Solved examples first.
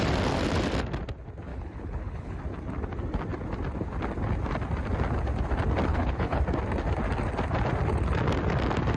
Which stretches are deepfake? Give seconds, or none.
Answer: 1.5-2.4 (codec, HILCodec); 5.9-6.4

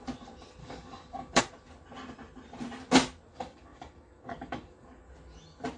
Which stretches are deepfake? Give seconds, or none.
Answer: 0.6-1.4 (codec, DAC); 3.3-5.0

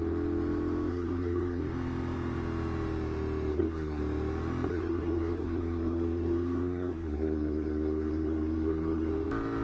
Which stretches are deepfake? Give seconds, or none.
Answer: 0.9-1.6 (codec, SNAC); 3.5-4.0; 4.7-9.1

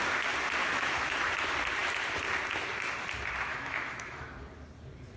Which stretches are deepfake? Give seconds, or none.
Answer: 0.6-1.3 (autoencoder, DAC-VAE); 3.5-4.3

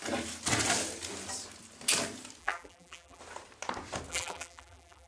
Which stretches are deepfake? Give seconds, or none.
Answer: 2.4-3.2 (vocoder, BigVGAN v2); 4.1-5.1